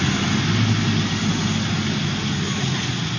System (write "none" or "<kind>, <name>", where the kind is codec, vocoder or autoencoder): none